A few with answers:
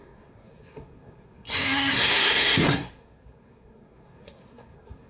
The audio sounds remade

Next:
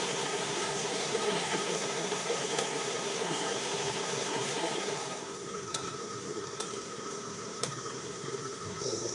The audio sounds remade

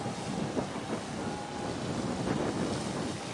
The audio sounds recorded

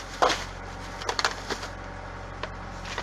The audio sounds recorded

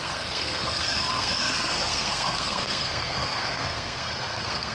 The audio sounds remade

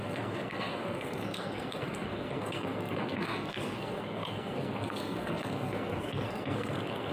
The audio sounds remade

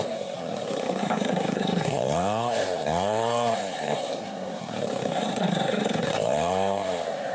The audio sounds remade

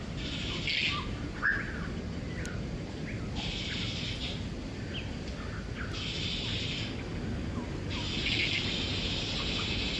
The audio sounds recorded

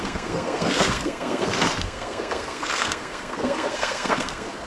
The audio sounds remade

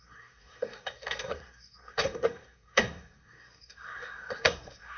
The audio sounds remade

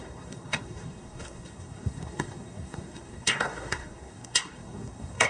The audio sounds remade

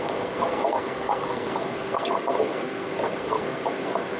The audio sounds remade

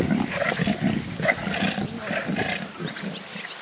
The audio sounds recorded